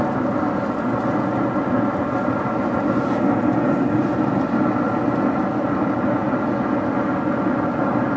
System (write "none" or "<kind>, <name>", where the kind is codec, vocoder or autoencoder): none